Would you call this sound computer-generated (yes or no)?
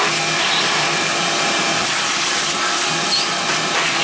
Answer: yes